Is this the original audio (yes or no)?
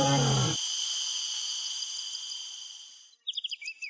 yes